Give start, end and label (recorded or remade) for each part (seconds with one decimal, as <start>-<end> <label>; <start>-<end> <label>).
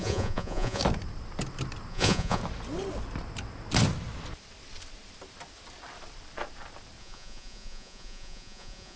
0.0-0.8 remade; 0.8-1.9 recorded; 1.9-2.4 remade; 2.4-7.0 recorded; 7.0-9.0 remade